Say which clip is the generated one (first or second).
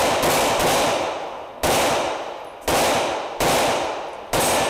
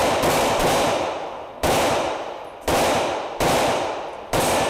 second